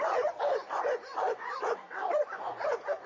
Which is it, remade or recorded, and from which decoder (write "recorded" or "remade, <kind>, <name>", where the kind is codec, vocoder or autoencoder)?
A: remade, vocoder, Vocos